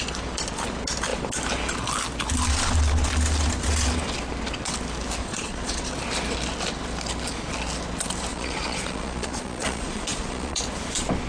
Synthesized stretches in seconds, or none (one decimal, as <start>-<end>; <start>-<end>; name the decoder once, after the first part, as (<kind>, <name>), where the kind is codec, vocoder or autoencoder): 5.2-5.9 (vocoder, Vocos); 8.3-10.6